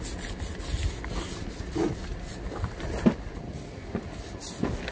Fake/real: real